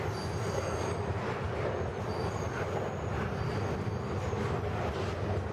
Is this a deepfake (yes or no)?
no